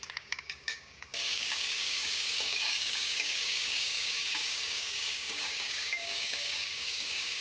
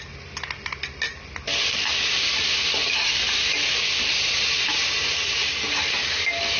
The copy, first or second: first